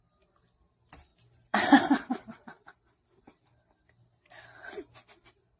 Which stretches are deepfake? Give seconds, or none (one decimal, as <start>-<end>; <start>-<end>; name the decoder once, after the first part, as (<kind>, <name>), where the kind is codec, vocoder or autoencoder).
1.1-3.2 (vocoder, BigVGAN v2)